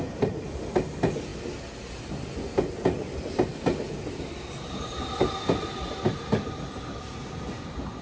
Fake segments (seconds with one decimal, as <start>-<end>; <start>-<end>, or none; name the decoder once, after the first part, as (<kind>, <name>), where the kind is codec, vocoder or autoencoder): none